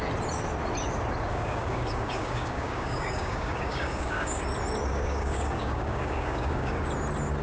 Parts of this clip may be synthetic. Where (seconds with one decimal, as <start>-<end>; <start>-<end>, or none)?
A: 1.3-4.4; 4.9-6.8